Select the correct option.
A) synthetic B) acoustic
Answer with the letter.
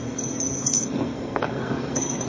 A